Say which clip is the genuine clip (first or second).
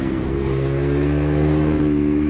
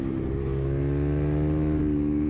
second